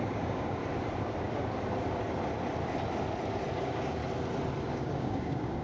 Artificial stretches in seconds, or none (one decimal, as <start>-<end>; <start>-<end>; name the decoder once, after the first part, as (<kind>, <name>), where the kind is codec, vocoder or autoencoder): 0.0-0.6 (codec, DAC); 3.6-4.0; 4.6-5.6